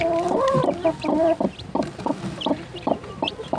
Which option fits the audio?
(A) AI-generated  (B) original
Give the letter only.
A